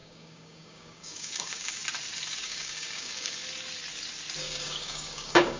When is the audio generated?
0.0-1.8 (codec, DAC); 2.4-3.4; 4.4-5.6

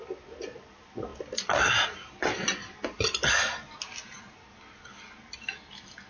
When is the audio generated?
none

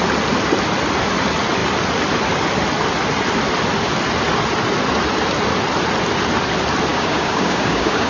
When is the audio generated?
6.9-8.1 (codec, DAC)

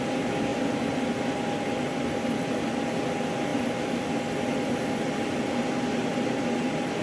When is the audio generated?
none

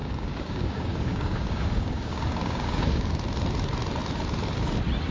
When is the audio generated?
0.0-3.1 (codec, DAC)

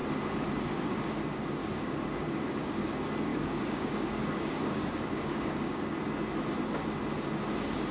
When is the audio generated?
1.6-2.8 (codec, DAC); 3.3-6.0